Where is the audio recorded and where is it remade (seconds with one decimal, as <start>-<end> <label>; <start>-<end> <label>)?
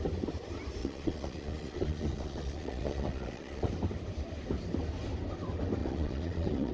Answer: 0.0-0.8 recorded; 0.8-3.7 remade; 3.7-5.8 recorded; 5.8-6.7 remade